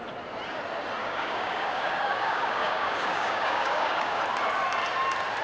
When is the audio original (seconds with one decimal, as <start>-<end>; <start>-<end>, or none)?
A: 0.0-1.0; 4.2-5.4